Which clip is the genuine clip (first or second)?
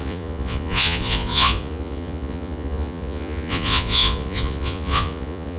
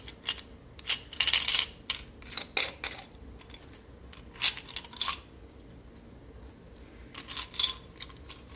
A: second